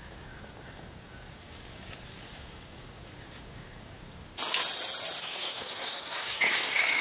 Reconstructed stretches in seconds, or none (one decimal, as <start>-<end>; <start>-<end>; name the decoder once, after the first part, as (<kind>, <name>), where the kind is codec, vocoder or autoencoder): 0.0-4.3 (codec, DAC); 5.2-7.0